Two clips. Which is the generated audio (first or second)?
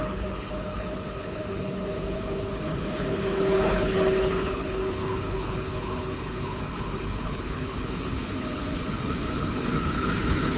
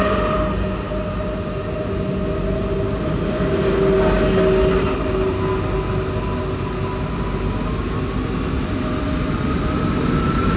first